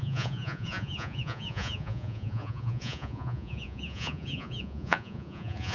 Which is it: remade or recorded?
remade